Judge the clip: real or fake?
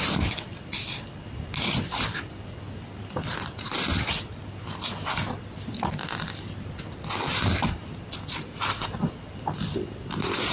real